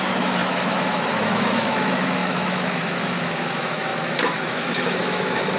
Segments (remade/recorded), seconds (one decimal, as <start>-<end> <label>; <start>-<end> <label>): 0.0-5.6 remade